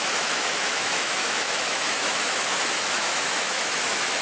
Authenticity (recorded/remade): remade